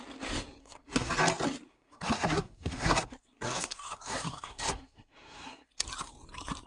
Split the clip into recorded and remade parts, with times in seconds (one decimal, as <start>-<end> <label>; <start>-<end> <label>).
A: 0.0-0.6 recorded; 0.6-1.1 remade; 1.1-1.7 recorded; 1.7-5.7 remade; 5.7-6.7 recorded